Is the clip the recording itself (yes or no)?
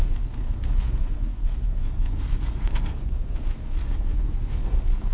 no